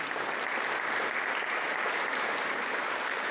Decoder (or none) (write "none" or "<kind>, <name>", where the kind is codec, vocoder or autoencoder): none